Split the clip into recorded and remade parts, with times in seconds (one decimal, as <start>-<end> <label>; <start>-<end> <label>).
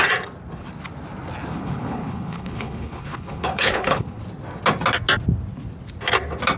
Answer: 0.0-1.5 recorded; 1.5-4.2 remade; 4.2-6.6 recorded